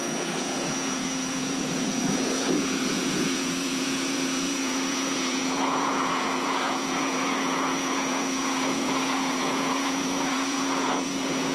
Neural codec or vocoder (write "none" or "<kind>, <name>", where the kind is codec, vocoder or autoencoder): vocoder, Vocos